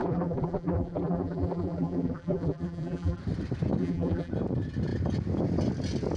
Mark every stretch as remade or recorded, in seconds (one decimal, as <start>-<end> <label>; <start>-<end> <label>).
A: 0.0-3.2 remade; 3.2-3.8 recorded; 3.8-4.3 remade; 4.3-6.2 recorded